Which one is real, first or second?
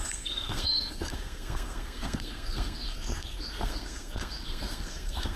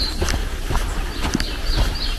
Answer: second